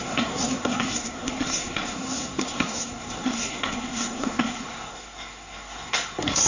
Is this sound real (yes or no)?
no